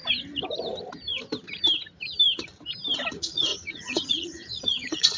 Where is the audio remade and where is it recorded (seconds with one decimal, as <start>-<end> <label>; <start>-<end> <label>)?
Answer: 0.0-3.1 recorded; 3.1-5.2 remade